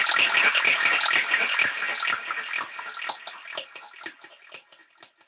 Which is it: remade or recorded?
recorded